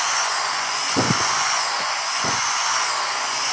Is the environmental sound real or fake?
fake